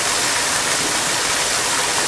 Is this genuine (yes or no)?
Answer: yes